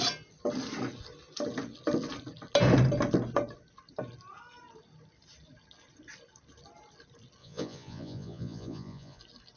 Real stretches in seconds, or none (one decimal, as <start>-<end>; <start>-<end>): 0.0-7.4; 9.2-9.6